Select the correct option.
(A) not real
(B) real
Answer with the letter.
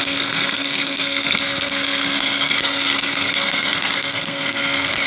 A